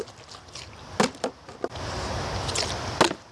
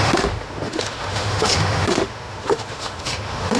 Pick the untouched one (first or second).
first